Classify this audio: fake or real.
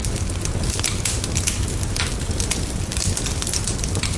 real